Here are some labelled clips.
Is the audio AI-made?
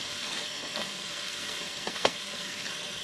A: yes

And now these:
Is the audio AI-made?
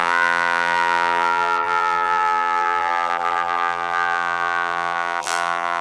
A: yes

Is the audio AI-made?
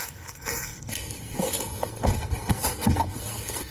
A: yes